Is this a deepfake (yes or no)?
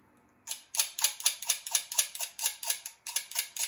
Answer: yes